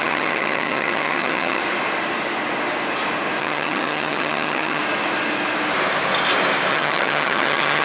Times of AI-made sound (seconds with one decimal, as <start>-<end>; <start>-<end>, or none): 0.0-1.6; 3.4-4.8; 6.7-7.8